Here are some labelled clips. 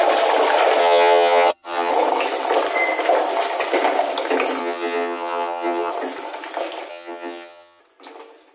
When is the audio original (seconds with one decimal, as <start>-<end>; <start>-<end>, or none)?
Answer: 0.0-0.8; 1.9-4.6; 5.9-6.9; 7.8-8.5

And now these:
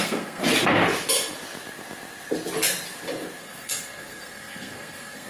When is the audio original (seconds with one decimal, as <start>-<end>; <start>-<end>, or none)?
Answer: 0.4-3.4

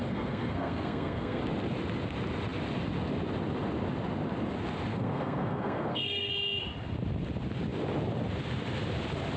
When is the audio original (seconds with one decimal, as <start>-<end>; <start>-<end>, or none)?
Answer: 1.4-4.9; 6.3-9.4

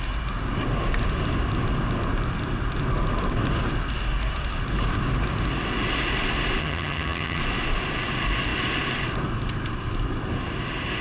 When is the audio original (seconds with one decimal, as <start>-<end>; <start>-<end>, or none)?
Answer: 0.0-6.6; 7.4-11.0

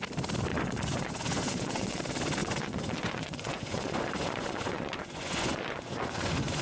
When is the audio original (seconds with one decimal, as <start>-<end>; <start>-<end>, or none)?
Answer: 0.0-0.5; 2.0-2.4

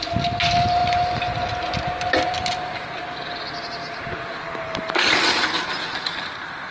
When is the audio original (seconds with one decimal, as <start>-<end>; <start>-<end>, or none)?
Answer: 0.0-6.7